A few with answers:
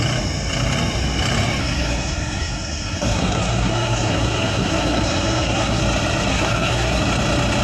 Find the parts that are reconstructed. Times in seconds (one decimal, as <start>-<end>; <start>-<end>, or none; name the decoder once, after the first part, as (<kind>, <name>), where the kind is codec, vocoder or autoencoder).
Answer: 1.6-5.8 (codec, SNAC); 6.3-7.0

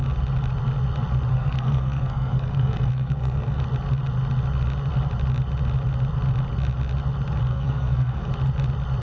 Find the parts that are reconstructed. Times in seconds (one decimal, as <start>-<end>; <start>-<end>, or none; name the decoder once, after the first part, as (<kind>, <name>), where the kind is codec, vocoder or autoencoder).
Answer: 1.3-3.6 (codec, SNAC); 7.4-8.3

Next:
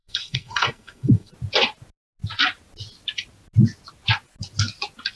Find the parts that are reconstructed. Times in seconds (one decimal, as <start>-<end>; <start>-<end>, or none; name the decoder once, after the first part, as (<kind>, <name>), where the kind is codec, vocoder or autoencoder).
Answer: 0.0-1.3 (codec, SNAC)